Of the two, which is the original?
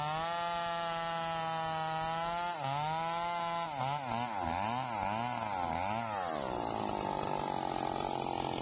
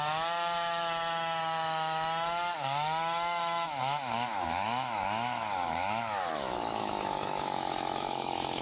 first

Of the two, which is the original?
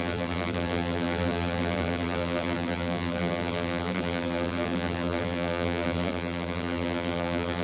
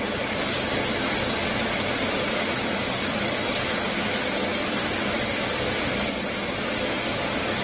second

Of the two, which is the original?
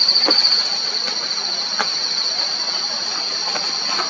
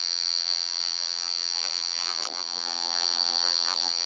first